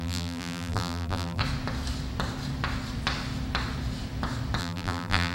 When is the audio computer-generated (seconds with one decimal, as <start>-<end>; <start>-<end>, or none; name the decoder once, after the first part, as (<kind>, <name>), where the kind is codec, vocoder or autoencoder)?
0.0-1.4 (vocoder, BigVGAN v2); 4.6-5.3